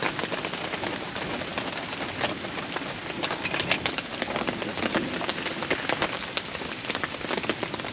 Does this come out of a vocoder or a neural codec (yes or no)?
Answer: no